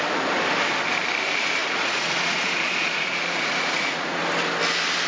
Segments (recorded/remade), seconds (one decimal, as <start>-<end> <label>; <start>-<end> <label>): 0.0-1.6 recorded; 1.6-4.2 remade; 4.2-5.1 recorded